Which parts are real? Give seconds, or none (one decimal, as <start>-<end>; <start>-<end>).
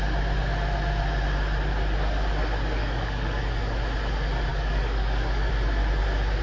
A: 0.0-2.8; 3.8-4.5; 5.5-6.4